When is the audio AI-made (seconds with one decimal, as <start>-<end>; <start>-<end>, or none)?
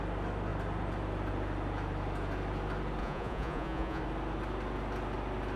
3.0-4.0